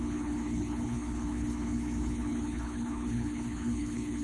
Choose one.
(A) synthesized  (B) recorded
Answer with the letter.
A